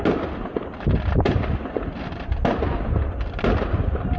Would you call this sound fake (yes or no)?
no